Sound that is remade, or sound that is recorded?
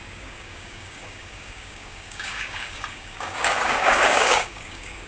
remade